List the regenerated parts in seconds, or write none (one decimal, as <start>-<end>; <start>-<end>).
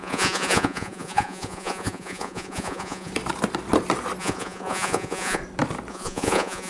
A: 0.0-3.1; 4.2-5.4; 5.9-6.7